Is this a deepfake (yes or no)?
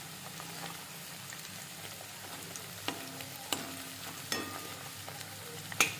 no